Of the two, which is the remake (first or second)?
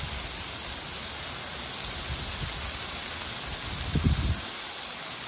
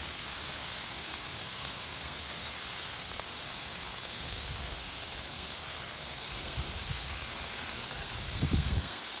second